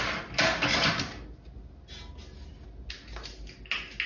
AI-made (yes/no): no